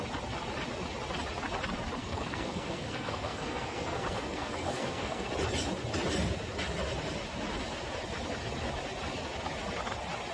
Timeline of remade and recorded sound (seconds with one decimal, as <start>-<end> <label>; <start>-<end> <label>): 0.0-2.0 recorded; 2.0-5.3 remade; 5.3-10.3 recorded